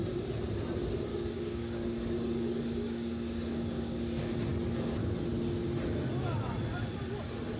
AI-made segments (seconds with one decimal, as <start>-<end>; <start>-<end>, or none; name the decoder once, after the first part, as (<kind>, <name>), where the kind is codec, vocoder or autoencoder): 1.1-4.0 (codec, DAC)